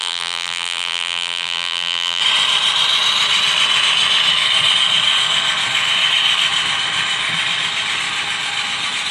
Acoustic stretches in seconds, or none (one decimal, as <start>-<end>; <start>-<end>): 2.2-9.1